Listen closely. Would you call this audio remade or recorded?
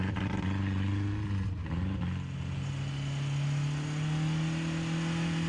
recorded